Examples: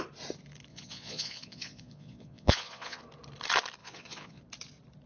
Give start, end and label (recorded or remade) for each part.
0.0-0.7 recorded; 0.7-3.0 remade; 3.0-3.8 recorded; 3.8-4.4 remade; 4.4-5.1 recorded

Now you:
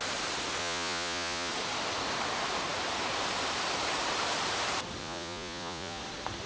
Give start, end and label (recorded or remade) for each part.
0.0-0.6 recorded; 0.6-1.5 remade; 1.5-5.0 recorded; 5.0-6.0 remade; 6.0-6.5 recorded

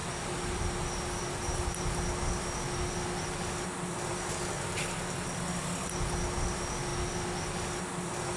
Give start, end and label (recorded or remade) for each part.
0.0-8.4 recorded

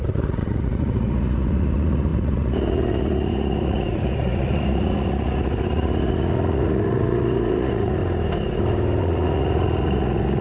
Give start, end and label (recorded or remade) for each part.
0.0-8.0 remade; 8.0-9.0 recorded; 9.0-10.4 remade